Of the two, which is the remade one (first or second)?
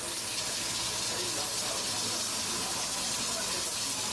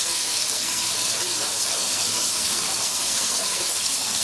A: second